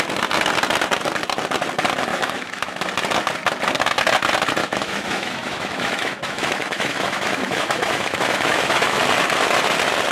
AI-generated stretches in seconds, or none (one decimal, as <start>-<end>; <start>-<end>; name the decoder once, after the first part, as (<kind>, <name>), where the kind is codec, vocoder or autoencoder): 2.1-2.8 (autoencoder, DAC-VAE); 4.6-9.0